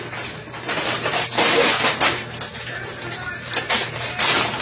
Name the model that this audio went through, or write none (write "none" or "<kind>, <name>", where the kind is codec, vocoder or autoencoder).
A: none